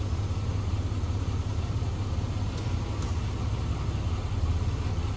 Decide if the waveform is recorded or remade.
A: recorded